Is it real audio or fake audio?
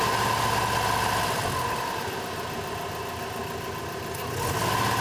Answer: real